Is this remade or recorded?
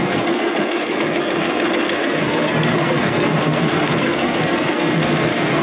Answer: remade